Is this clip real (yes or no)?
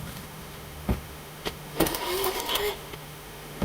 no